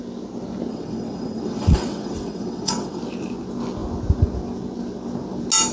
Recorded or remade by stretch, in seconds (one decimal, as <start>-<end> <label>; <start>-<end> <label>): 0.0-0.7 recorded; 0.7-3.0 remade; 3.0-5.7 recorded